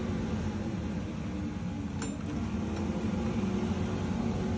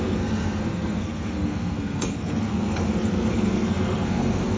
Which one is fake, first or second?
second